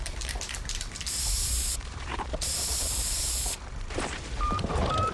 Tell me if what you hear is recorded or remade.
remade